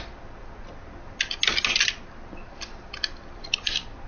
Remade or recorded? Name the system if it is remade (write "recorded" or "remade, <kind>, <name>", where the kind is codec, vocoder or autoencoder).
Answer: recorded